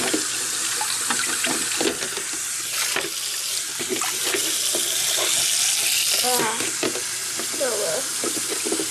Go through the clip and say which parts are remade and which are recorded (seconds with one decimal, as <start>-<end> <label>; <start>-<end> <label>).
0.0-8.9 recorded